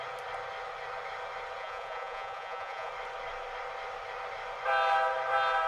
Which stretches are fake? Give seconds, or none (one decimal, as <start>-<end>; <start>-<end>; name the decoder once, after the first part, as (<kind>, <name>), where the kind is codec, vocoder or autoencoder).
1.6-2.9 (vocoder, Vocos)